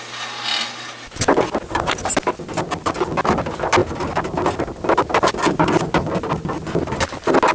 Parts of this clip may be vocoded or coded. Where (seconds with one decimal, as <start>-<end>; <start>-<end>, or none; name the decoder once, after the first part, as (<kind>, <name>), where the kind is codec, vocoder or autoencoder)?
none